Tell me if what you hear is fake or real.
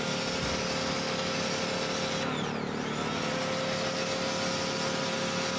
real